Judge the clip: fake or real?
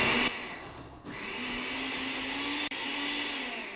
real